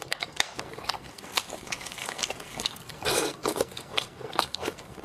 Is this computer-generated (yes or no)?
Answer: yes